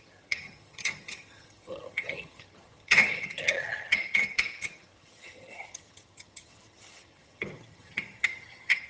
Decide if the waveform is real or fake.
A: fake